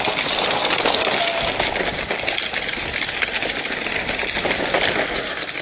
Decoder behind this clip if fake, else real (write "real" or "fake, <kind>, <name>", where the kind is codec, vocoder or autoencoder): real